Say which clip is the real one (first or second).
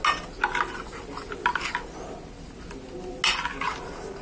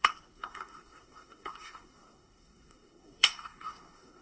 first